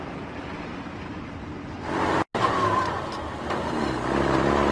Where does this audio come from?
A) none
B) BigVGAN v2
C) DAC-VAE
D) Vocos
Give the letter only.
A